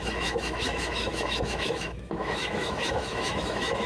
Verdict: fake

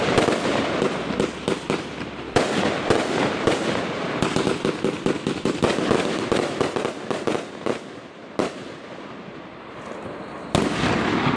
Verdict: real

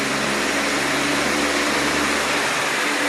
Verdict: fake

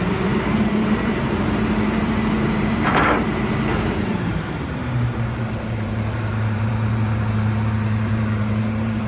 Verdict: fake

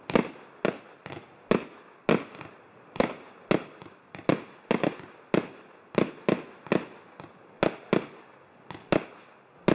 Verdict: real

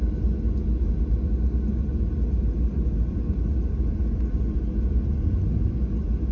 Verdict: real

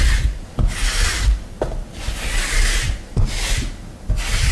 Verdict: real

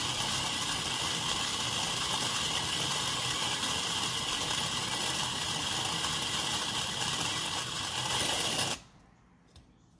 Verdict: fake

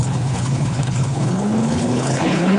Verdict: fake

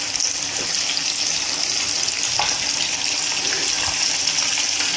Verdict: real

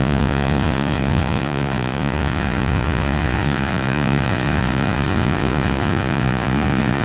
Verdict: fake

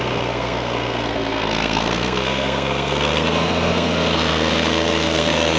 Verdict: fake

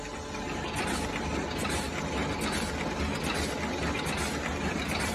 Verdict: real